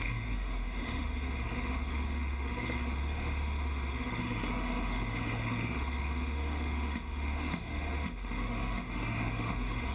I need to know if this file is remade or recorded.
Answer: remade